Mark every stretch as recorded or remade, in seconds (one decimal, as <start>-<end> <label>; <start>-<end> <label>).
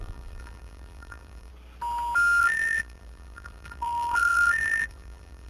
0.0-1.5 remade; 1.5-2.4 recorded; 2.4-5.5 remade